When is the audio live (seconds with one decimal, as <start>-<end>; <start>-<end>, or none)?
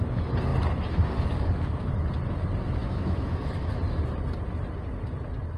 0.0-2.8; 3.8-5.6